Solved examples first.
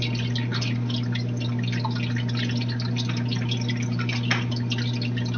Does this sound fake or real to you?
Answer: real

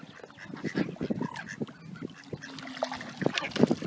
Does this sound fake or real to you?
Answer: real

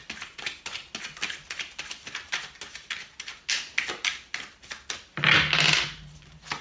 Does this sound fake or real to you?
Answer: real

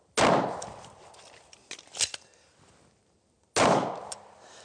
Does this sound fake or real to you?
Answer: real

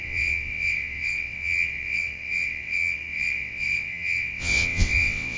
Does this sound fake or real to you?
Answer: fake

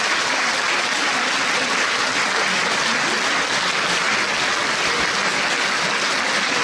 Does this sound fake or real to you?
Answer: real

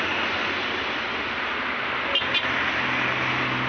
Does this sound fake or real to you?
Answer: real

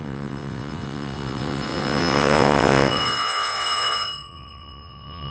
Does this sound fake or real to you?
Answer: fake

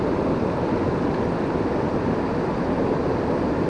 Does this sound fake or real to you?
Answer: real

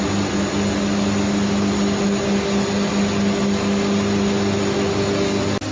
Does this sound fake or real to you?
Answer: real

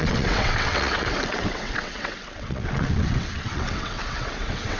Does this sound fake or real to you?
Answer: fake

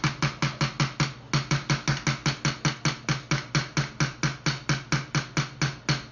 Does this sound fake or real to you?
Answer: real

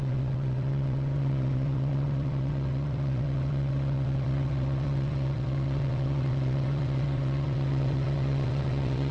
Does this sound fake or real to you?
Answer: fake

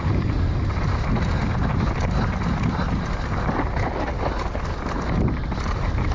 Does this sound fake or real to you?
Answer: real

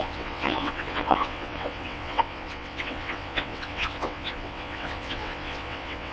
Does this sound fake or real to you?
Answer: fake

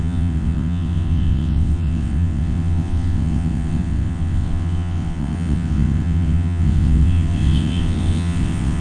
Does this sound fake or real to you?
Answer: fake